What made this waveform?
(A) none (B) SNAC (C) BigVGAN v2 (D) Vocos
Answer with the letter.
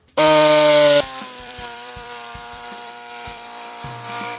C